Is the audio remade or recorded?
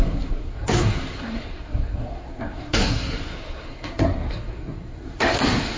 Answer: remade